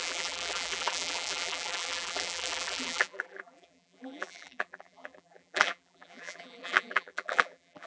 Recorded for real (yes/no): no